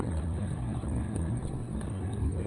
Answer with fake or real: fake